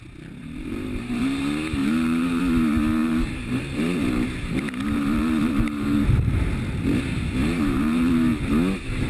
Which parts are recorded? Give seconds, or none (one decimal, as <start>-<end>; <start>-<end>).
0.0-0.4; 1.4-1.8; 2.4-3.0; 6.4-7.4; 8.4-9.1